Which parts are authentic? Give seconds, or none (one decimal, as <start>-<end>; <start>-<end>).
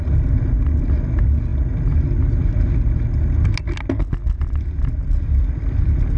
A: 0.0-6.2